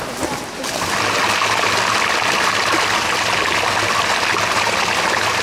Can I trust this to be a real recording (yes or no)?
yes